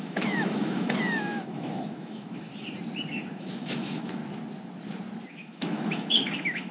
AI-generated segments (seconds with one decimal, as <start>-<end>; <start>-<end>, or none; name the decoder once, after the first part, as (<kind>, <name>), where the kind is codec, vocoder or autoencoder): 0.0-2.5 (autoencoder, DAC-VAE); 3.3-4.2; 5.3-6.7